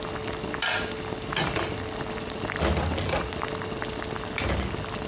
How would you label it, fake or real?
real